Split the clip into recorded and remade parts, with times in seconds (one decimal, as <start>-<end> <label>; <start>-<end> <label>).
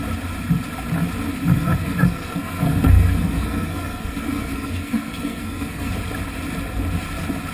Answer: 0.0-1.5 recorded; 1.5-5.9 remade; 5.9-7.5 recorded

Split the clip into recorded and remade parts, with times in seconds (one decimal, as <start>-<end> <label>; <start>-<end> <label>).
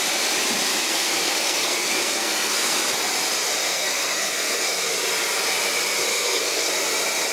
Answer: 0.0-0.7 recorded; 0.7-2.8 remade; 2.8-3.7 recorded; 3.7-4.9 remade; 4.9-6.1 recorded; 6.1-6.7 remade; 6.7-7.3 recorded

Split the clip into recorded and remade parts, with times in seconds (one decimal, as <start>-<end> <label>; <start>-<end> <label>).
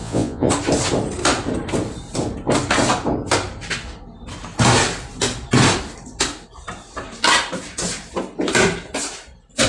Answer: 0.0-0.5 remade; 0.5-9.7 recorded